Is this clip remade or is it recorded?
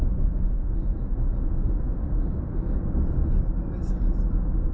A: recorded